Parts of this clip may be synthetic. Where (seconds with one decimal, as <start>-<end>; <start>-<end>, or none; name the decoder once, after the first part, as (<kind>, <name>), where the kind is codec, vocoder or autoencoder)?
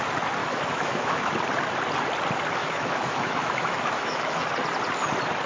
0.4-1.3 (autoencoder, DAC-VAE); 2.6-4.5